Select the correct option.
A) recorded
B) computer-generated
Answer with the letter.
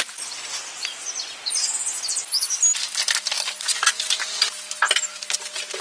A